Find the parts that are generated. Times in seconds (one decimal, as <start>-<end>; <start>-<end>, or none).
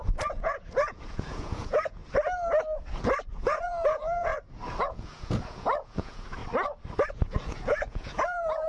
0.0-2.0; 3.3-4.3; 4.8-6.4; 7.1-8.7